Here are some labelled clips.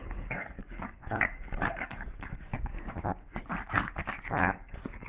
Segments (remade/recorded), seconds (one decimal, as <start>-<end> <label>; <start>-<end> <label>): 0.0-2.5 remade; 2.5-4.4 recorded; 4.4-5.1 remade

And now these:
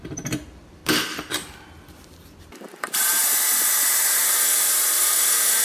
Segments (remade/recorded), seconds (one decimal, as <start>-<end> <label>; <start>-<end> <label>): 0.0-0.8 remade; 0.8-2.4 recorded; 2.4-5.6 remade

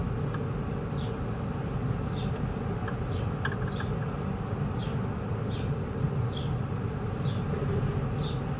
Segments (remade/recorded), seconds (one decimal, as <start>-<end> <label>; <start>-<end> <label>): 0.0-8.6 recorded